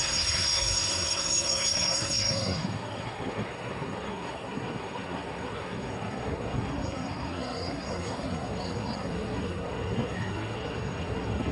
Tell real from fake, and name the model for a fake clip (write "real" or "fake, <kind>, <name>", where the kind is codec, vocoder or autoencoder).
fake, codec, SNAC